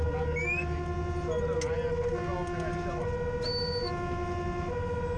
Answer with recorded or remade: recorded